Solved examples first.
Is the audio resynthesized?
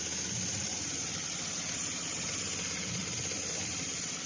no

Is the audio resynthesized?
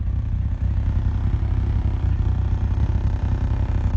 no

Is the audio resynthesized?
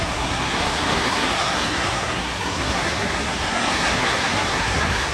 yes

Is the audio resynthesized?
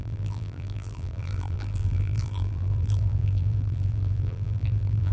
yes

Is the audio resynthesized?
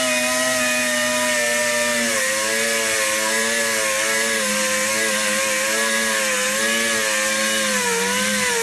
no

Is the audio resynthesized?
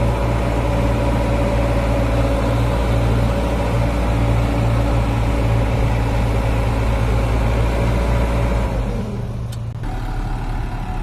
no